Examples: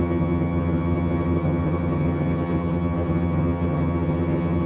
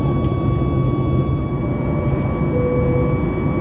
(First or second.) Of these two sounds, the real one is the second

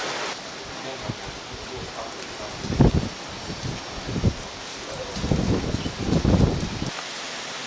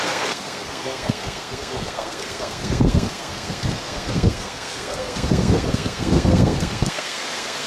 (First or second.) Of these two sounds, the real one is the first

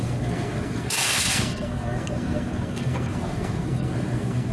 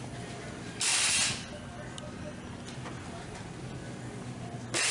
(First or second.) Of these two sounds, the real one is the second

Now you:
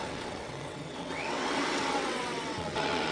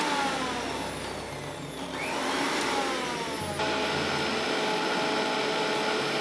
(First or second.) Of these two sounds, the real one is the second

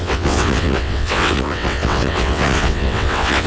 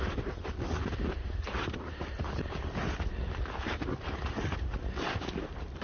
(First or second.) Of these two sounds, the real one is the second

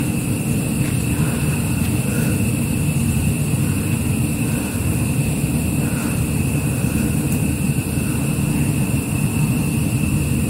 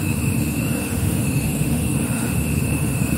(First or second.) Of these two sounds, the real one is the first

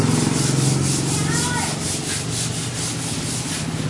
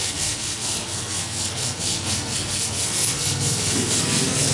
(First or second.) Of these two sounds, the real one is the first